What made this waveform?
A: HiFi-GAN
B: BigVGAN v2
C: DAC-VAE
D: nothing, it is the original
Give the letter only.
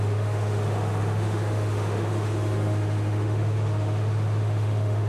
C